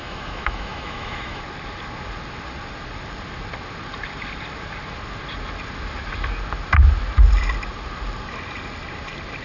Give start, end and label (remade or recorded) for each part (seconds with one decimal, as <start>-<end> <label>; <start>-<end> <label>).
0.0-1.4 remade; 1.4-9.4 recorded